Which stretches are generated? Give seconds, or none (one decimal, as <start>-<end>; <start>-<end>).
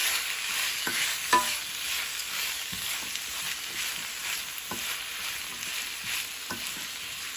0.0-1.6; 2.1-3.0